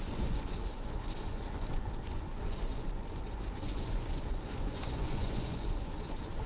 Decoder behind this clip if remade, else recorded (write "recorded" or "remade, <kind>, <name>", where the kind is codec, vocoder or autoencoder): remade, vocoder, Vocos